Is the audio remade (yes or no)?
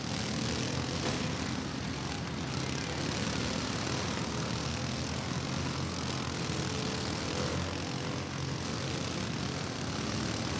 no